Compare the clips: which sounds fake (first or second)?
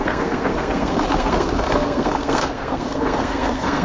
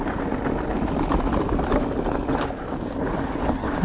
first